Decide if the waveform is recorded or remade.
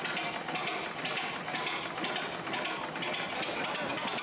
recorded